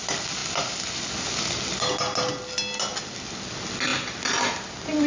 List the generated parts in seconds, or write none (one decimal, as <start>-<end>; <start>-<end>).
none